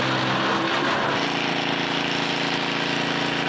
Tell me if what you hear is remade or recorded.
recorded